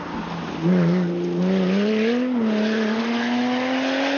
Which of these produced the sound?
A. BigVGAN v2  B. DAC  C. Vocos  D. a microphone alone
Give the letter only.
D